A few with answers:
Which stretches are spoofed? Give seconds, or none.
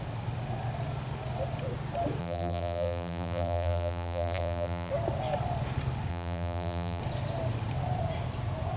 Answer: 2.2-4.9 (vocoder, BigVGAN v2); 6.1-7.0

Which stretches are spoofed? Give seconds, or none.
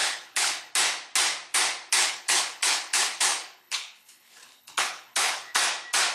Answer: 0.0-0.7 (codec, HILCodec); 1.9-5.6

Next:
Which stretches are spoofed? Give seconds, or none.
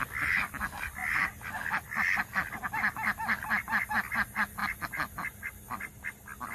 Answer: none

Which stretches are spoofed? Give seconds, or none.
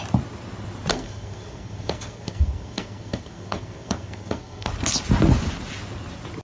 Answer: 0.9-4.7 (codec, SNAC)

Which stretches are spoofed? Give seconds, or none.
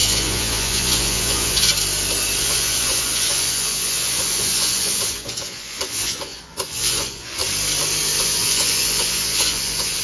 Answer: 0.0-1.7 (vocoder, Vocos); 2.4-7.4; 8.2-10.0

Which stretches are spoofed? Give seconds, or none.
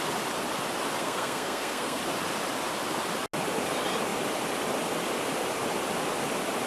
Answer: 1.0-2.0 (codec, SNAC)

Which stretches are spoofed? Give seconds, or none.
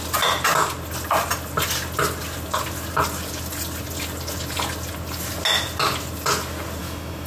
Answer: 6.8-7.3 (autoencoder, DAC-VAE)